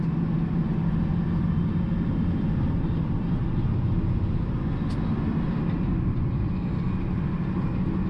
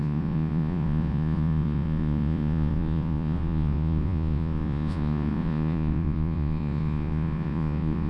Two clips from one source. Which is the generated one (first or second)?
second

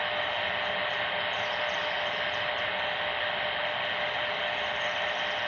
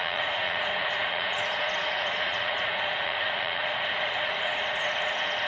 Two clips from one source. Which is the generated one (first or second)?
second